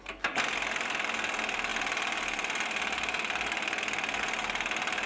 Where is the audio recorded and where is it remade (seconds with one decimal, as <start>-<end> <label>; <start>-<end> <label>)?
0.0-5.1 recorded